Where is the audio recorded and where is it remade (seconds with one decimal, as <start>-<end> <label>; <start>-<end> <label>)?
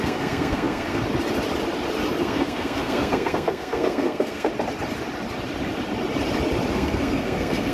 0.0-1.0 remade; 1.0-2.2 recorded; 2.2-4.5 remade; 4.5-6.7 recorded; 6.7-7.7 remade